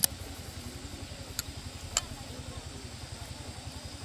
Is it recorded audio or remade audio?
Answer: recorded